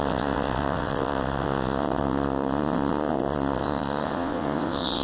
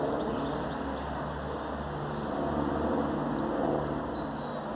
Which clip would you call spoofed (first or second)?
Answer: first